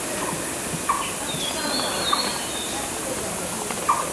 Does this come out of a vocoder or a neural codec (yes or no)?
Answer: no